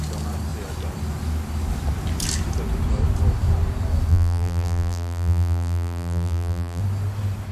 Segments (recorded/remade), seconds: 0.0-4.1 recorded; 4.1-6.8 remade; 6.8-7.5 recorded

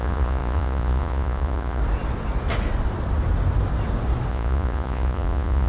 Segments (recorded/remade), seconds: 0.0-1.8 remade; 1.8-4.3 recorded; 4.3-5.7 remade

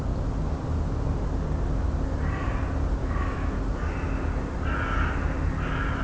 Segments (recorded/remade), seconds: 0.0-3.0 recorded; 3.0-3.6 remade; 3.6-6.0 recorded

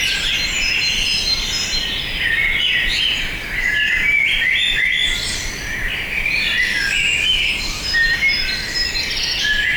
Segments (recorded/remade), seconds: 0.0-6.7 recorded; 6.7-7.5 remade; 7.5-9.8 recorded

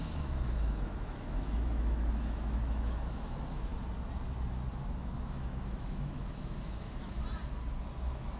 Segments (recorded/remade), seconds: 0.0-3.7 remade; 3.7-4.7 recorded; 4.7-7.2 remade; 7.2-8.0 recorded; 8.0-8.4 remade

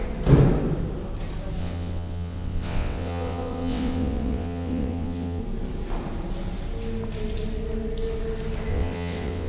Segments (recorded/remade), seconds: 0.0-1.6 recorded; 1.6-5.4 remade; 5.4-8.7 recorded; 8.7-9.5 remade

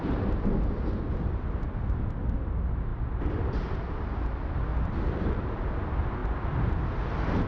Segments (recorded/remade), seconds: 0.0-4.7 recorded; 4.7-5.4 remade; 5.4-7.5 recorded